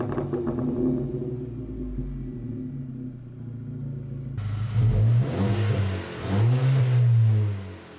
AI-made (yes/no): no